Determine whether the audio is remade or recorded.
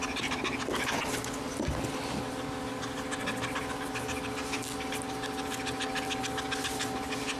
recorded